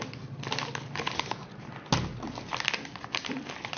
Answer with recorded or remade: recorded